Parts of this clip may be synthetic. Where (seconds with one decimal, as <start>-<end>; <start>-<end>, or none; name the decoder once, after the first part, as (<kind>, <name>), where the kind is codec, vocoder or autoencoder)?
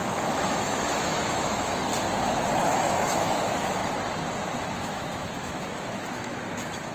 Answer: 0.0-1.9 (autoencoder, DAC-VAE); 2.6-3.8; 4.6-6.9